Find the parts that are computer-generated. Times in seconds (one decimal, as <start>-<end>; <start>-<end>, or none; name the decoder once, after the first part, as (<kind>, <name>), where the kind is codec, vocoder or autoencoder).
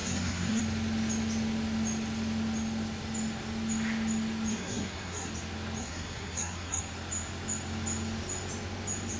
0.0-0.6 (codec, SNAC); 4.5-5.3; 5.8-6.8